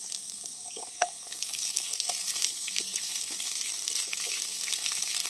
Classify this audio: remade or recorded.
remade